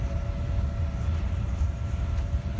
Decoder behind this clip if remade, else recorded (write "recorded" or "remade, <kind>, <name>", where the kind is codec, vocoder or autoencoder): remade, vocoder, BigVGAN v2